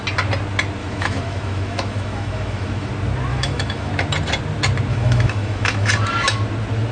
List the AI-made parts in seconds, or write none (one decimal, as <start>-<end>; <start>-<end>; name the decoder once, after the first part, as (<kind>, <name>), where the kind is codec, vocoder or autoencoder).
0.8-2.9 (autoencoder, DAC-VAE); 3.3-3.9; 4.9-5.9